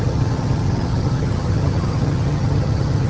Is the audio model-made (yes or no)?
yes